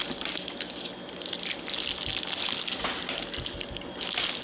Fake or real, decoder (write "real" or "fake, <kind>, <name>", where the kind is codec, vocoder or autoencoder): real